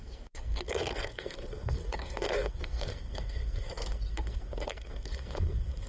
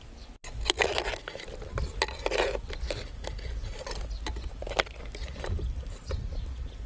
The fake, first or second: first